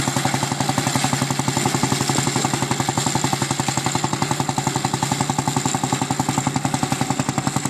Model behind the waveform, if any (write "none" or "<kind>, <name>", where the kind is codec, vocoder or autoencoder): none